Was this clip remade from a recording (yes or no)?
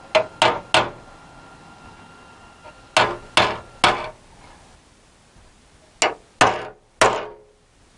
no